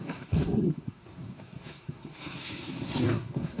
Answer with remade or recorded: remade